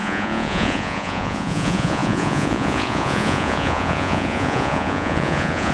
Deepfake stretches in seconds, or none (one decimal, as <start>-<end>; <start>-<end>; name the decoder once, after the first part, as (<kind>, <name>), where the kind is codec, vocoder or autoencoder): 0.0-5.7 (vocoder, Vocos)